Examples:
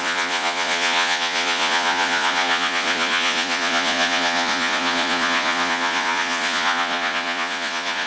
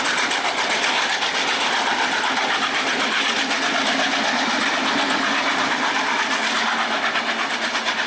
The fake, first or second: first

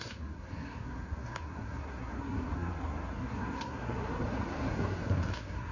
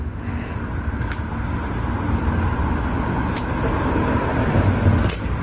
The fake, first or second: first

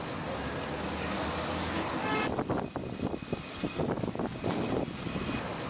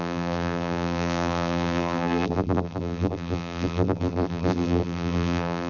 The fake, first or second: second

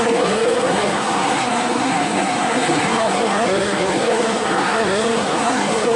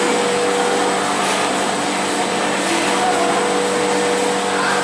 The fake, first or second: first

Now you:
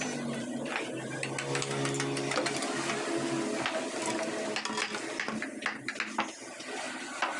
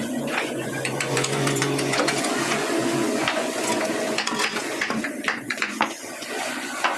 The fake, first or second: second